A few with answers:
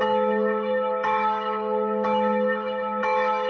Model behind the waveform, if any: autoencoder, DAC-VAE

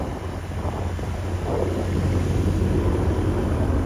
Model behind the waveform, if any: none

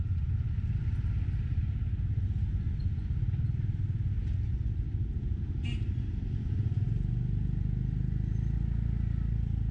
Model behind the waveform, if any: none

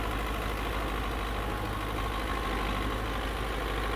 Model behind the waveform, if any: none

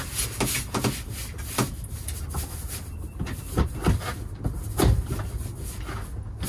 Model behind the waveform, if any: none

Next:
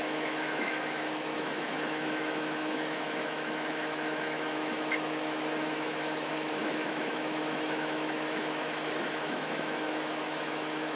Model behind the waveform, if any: autoencoder, DAC-VAE